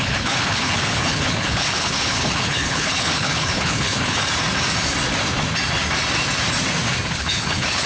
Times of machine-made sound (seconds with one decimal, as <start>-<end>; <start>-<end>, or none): 0.0-4.2; 7.1-7.9